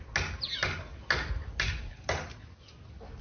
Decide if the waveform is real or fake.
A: real